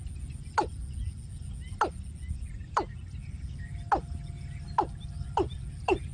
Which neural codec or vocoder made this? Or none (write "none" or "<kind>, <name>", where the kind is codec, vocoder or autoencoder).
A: none